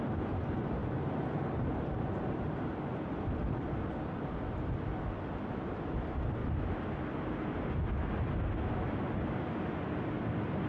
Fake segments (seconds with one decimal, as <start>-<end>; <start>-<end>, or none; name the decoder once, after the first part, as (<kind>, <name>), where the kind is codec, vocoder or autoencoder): 0.0-6.4 (vocoder, BigVGAN v2); 10.1-10.7